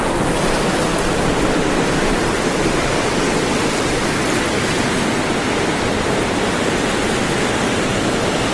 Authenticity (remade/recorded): recorded